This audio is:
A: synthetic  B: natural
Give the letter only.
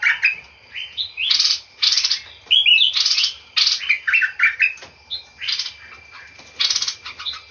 B